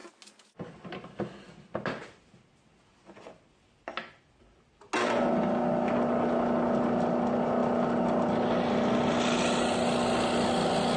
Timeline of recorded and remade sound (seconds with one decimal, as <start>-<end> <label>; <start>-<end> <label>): 0.0-11.0 recorded

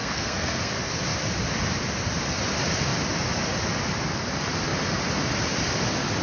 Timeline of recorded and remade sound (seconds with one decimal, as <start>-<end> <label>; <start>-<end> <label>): 0.0-0.7 remade; 0.7-6.2 recorded

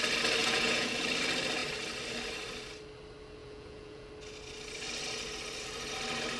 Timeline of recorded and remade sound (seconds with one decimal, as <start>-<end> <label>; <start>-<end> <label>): 0.0-0.4 recorded; 0.4-1.0 remade; 1.0-3.4 recorded; 3.4-4.1 remade; 4.1-6.4 recorded

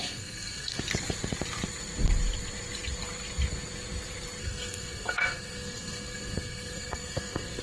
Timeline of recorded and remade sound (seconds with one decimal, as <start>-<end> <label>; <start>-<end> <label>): 0.0-0.8 remade; 0.8-4.4 recorded; 4.4-7.6 remade

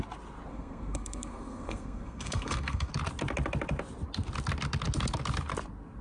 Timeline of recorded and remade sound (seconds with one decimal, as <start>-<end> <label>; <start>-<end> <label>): 0.0-0.5 recorded; 0.5-2.9 remade; 2.9-6.0 recorded

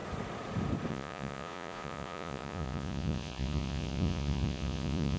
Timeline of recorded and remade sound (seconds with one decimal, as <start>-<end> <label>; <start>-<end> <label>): 0.0-0.9 recorded; 0.9-5.2 remade

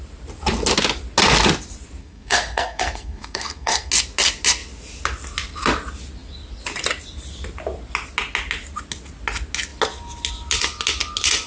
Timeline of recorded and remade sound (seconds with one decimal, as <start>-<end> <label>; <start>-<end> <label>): 0.0-2.0 recorded; 2.0-3.9 remade; 3.9-11.5 recorded